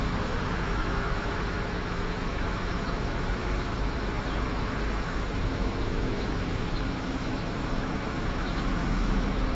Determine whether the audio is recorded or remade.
remade